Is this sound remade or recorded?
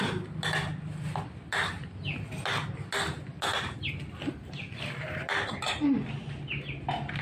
recorded